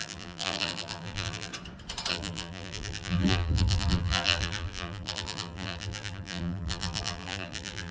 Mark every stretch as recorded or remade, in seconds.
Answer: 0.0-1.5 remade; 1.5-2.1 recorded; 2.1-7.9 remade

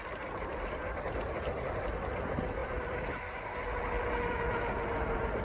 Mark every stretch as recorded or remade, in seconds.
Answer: 0.0-2.6 recorded; 2.6-3.2 remade; 3.2-5.4 recorded